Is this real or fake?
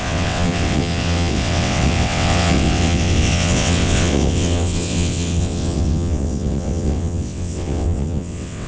fake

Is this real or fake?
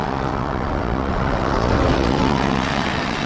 fake